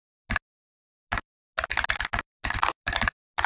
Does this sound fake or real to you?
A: real